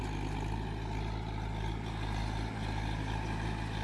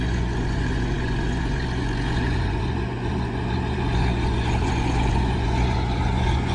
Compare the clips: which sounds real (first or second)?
first